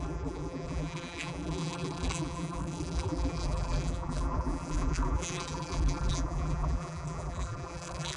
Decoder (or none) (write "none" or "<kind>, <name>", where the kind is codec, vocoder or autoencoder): vocoder, BigVGAN v2